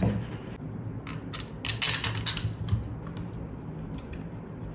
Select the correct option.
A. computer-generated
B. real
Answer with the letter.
B